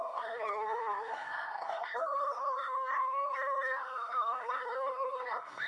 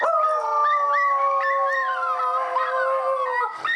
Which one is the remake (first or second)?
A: first